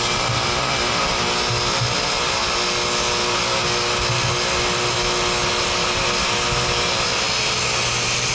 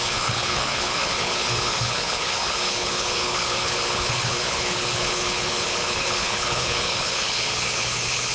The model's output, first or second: second